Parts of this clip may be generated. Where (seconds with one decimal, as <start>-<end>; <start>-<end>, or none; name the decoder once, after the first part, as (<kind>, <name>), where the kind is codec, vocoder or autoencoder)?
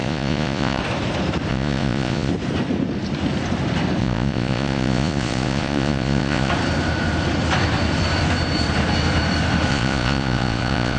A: 0.0-0.8 (vocoder, Vocos); 1.5-2.3; 4.0-6.5; 9.7-11.0